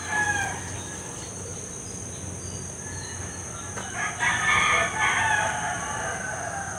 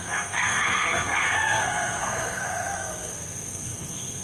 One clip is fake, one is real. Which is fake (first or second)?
second